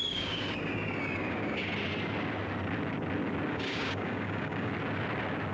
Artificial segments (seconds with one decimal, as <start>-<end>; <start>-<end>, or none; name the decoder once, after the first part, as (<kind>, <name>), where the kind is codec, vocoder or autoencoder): 0.0-1.7 (codec, DAC); 3.5-4.7